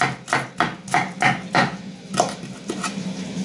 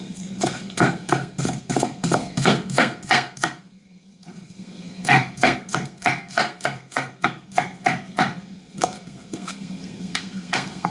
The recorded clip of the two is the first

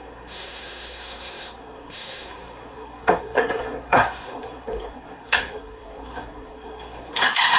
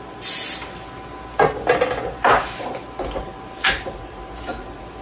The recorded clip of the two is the second